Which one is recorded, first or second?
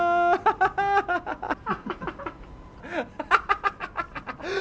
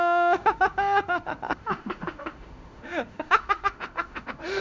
first